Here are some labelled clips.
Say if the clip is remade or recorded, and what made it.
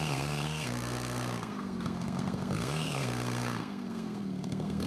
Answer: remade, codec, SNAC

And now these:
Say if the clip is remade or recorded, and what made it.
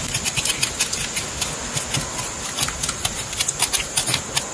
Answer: recorded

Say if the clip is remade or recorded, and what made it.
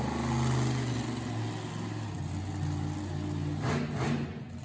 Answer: recorded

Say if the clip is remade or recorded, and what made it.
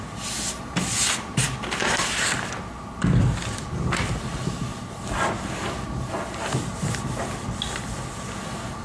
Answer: recorded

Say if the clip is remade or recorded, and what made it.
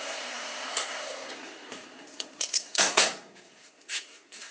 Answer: remade, codec, SNAC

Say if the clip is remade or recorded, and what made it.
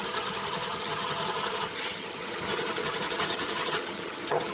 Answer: remade, vocoder, HiFi-GAN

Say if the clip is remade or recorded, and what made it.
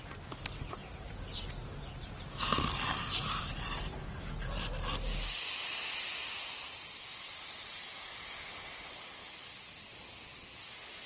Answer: recorded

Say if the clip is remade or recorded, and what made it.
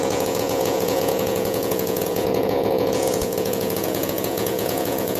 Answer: remade, vocoder, Vocos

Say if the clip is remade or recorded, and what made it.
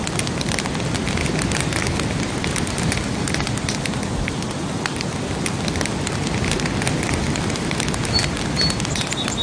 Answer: recorded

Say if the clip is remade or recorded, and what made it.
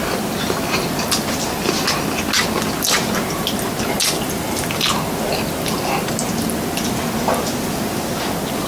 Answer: recorded